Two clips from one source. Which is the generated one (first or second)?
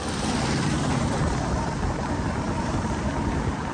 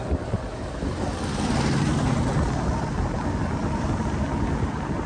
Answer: first